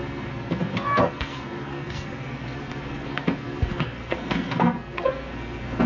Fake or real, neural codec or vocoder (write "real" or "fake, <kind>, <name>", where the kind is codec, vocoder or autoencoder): fake, codec, SNAC